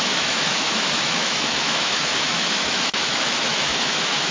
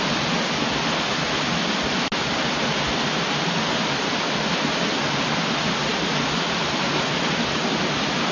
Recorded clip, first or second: second